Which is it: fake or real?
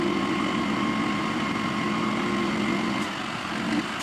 real